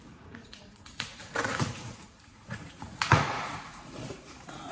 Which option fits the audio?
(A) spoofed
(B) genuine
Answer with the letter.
A